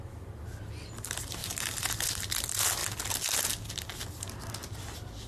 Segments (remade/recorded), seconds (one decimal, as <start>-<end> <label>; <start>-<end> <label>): 0.0-1.4 recorded; 1.4-2.0 remade; 2.0-5.3 recorded